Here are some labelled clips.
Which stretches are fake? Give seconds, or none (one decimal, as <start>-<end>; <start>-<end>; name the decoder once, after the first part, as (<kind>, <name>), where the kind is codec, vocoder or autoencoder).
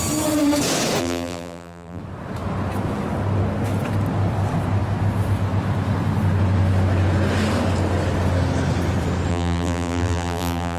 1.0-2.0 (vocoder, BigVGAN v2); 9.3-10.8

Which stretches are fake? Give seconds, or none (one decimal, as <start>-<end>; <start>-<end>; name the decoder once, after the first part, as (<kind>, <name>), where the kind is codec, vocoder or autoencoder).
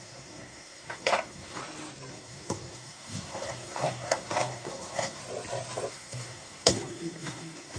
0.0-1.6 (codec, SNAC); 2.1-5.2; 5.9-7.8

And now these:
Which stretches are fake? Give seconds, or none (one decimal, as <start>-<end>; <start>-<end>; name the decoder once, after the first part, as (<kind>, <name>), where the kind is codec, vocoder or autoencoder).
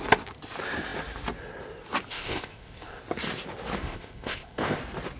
2.1-3.0 (codec, ZipCodec); 3.8-4.8